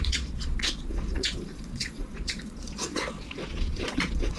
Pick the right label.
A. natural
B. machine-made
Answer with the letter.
B